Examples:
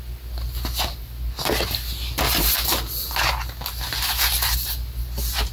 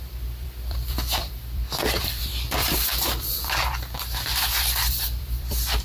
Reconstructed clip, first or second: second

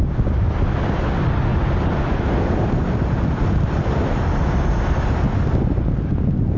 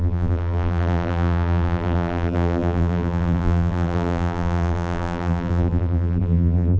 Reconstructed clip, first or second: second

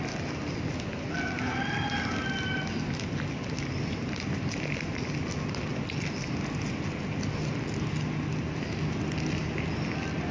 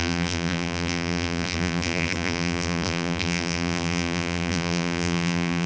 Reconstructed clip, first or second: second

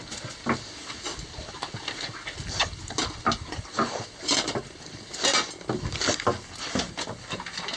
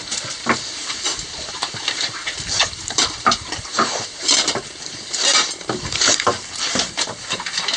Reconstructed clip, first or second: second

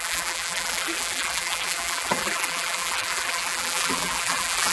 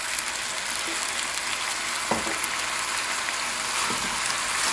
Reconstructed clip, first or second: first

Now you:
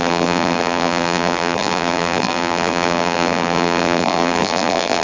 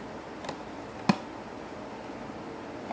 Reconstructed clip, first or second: first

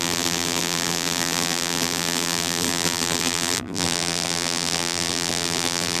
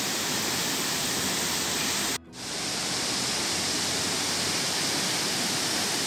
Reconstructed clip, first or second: first